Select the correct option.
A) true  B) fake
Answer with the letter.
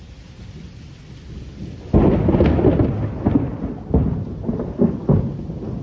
A